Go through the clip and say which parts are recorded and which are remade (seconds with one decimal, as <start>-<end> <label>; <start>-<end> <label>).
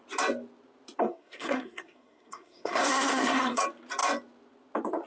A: 0.0-1.0 recorded; 1.0-3.6 remade; 3.6-5.1 recorded